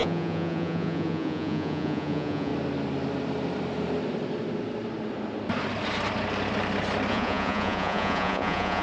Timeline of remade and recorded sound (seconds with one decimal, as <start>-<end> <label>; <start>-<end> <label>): 0.0-2.5 remade; 2.5-7.1 recorded; 7.1-8.8 remade